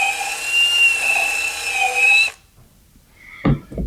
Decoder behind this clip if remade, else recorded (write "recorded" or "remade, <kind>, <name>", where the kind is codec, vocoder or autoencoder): recorded